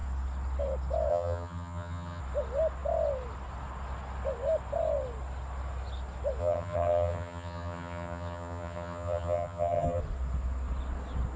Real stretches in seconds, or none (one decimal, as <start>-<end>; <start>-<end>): 0.0-1.1; 2.2-6.4; 10.0-11.4